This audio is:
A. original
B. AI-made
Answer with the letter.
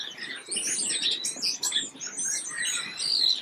A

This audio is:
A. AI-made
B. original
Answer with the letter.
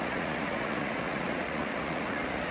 A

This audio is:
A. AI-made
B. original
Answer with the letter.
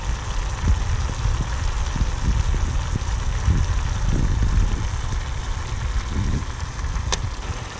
B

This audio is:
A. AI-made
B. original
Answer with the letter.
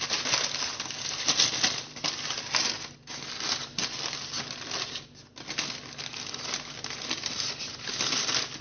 B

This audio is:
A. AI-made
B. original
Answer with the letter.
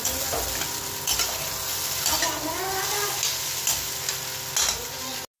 B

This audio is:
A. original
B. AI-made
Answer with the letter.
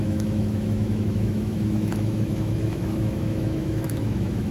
B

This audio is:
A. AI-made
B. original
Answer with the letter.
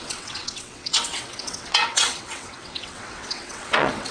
A